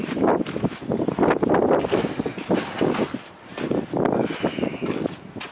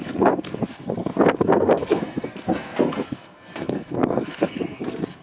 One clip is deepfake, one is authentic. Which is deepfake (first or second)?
second